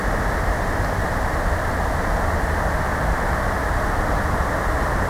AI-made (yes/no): no